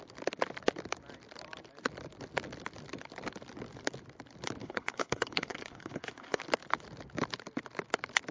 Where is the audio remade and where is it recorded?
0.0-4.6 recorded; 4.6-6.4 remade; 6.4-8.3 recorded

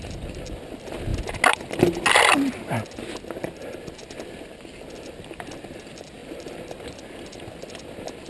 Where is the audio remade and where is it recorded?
0.0-8.3 recorded

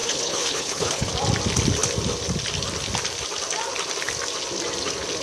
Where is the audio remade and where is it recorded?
0.0-1.1 remade; 1.1-5.2 recorded